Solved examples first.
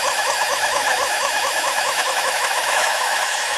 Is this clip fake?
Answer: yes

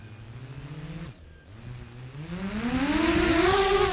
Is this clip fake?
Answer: no